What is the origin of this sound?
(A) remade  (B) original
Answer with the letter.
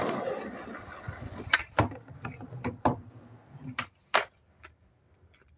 A